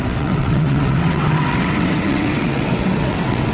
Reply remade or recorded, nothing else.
remade